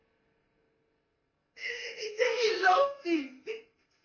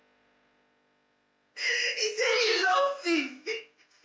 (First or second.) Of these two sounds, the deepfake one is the first